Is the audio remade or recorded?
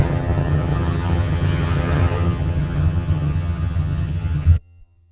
remade